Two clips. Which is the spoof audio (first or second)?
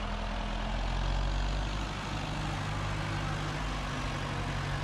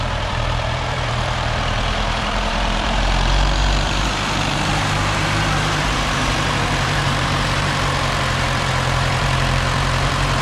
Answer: second